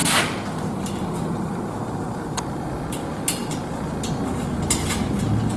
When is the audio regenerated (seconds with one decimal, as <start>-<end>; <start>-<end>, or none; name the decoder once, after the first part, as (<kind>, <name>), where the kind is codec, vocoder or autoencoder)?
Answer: none